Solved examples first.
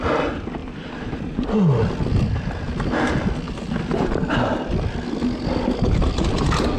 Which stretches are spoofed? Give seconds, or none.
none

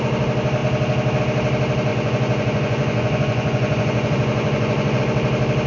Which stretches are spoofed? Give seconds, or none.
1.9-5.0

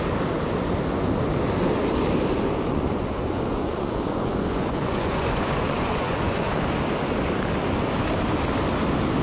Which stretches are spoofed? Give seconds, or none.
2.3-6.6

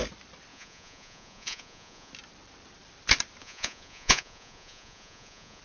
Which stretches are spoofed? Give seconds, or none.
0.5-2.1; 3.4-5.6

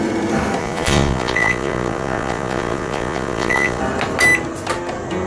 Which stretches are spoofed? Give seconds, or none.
0.6-3.8

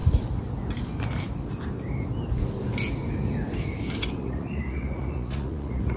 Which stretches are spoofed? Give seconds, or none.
4.2-6.0

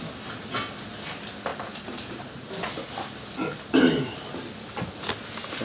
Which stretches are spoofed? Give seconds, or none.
none